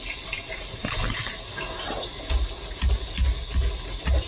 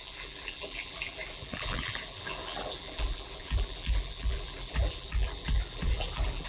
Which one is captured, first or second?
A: first